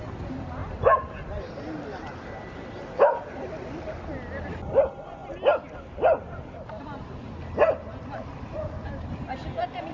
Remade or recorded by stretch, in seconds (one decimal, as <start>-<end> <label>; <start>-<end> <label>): 0.0-9.9 recorded